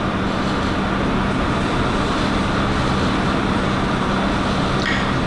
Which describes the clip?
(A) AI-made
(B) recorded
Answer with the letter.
B